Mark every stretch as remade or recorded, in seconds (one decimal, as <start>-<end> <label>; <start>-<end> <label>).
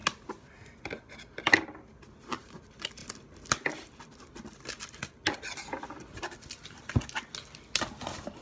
0.0-8.4 recorded